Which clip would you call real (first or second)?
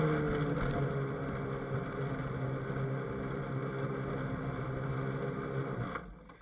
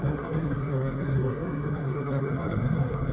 first